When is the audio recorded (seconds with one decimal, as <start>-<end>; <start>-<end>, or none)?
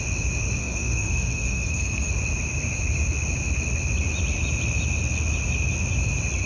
0.0-0.6; 2.1-6.5